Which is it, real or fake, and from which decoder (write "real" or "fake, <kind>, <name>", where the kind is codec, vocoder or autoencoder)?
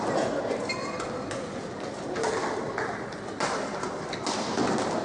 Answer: real